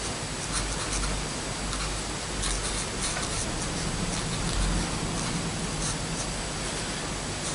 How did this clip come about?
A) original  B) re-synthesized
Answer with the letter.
A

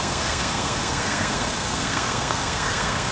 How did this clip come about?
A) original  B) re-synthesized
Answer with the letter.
B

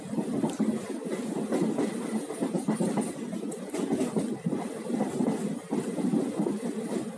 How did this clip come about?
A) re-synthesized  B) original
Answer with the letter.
B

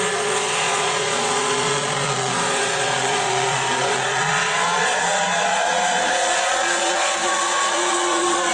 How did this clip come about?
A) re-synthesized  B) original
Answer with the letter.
A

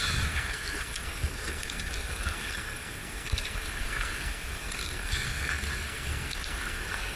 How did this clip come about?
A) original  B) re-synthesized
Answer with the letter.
B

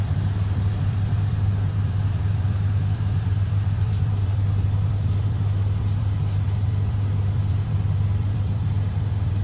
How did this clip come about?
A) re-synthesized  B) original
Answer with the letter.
A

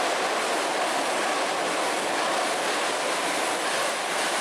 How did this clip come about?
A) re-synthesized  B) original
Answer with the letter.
B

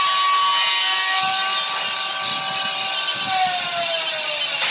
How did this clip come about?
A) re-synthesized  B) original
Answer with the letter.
B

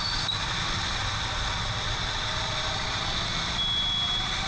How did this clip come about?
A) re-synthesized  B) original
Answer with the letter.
B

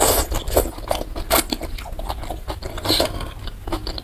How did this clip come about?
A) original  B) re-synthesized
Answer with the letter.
A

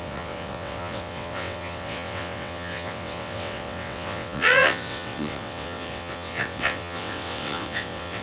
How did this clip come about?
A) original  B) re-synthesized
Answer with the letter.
B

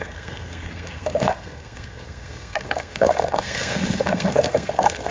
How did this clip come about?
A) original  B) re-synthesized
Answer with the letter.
B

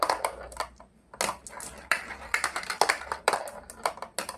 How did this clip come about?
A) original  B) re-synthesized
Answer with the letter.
B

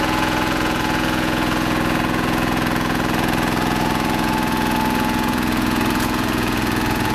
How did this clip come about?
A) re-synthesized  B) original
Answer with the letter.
A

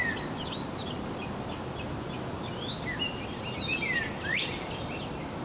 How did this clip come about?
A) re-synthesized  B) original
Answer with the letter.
B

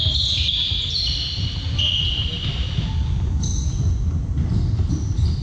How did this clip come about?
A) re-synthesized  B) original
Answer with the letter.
B